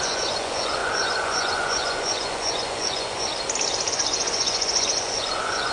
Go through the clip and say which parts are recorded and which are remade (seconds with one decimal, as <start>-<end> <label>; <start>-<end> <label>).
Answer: 0.0-3.3 remade; 3.3-3.9 recorded; 3.9-5.7 remade